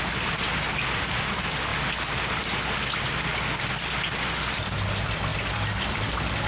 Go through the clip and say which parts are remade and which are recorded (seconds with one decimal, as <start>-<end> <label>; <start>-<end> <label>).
0.0-5.3 recorded; 5.3-6.0 remade; 6.0-6.5 recorded